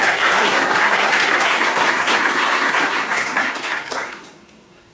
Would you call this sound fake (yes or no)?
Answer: yes